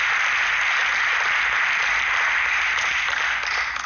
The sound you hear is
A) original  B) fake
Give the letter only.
A